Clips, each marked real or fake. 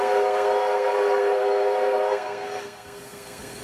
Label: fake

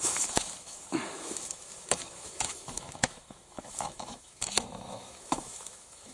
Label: fake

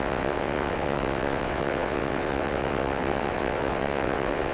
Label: fake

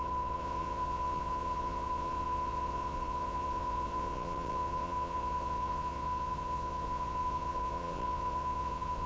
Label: fake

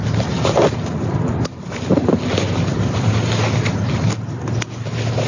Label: real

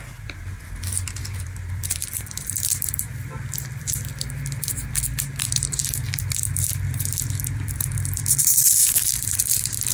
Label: fake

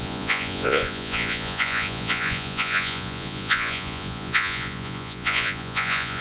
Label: fake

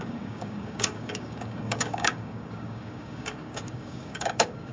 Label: fake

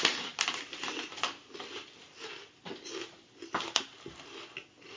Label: real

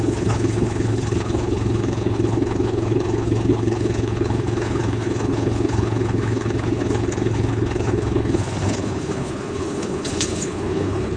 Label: fake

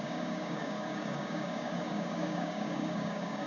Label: fake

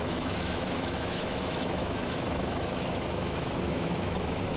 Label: fake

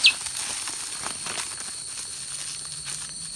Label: real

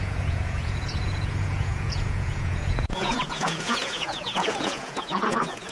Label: fake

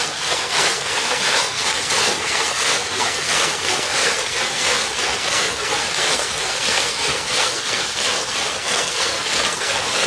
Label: fake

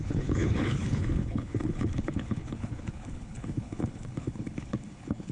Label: fake